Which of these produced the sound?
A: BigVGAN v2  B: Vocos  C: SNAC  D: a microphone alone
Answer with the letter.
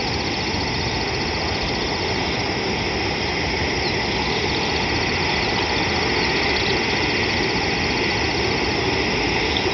D